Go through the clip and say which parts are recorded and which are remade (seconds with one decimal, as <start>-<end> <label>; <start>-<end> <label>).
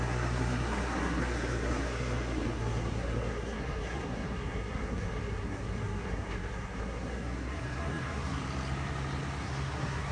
0.0-8.4 remade; 8.4-9.4 recorded; 9.4-10.1 remade